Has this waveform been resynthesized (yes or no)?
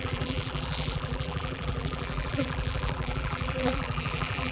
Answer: yes